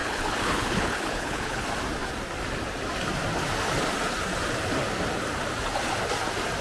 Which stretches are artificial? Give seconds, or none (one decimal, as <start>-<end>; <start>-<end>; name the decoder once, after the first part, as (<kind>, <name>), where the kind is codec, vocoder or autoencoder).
0.0-1.6 (codec, HILCodec)